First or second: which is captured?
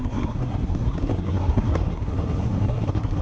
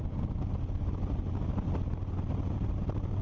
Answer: second